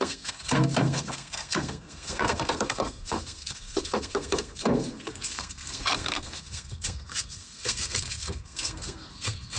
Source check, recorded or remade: remade